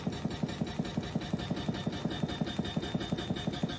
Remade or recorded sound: recorded